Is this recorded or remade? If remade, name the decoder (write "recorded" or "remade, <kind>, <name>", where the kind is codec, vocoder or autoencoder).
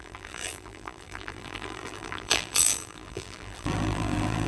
remade, vocoder, BigVGAN v2